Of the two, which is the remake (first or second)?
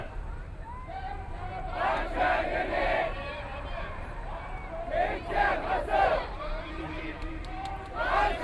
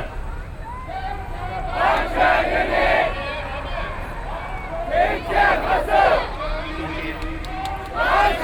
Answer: first